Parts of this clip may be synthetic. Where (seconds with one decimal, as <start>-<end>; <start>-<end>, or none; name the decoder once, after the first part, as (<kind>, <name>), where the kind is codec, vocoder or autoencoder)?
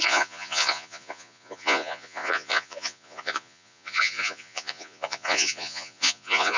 0.0-6.6 (vocoder, Vocos)